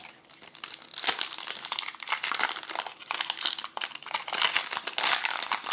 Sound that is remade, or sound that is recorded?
remade